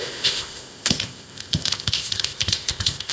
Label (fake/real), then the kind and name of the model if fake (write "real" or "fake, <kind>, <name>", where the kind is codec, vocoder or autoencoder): fake, codec, ZipCodec